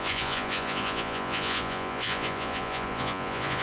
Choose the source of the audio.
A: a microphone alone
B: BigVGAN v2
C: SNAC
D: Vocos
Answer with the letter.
D